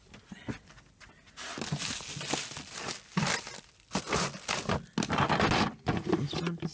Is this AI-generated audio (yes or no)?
no